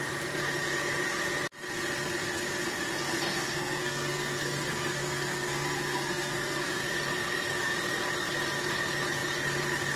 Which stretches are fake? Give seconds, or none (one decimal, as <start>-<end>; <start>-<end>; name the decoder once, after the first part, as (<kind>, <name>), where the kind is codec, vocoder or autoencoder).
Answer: 3.3-6.8 (codec, SNAC)